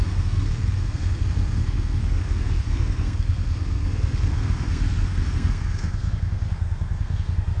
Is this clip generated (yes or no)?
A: yes